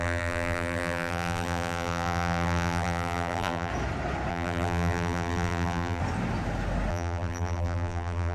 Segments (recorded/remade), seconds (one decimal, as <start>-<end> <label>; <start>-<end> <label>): 0.0-3.7 remade; 3.7-4.3 recorded; 4.3-6.0 remade; 6.0-6.9 recorded; 6.9-8.3 remade